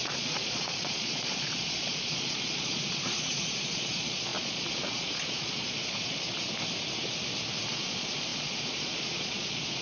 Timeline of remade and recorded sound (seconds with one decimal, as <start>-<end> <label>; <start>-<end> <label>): 0.0-6.3 remade; 6.3-7.7 recorded; 7.7-9.8 remade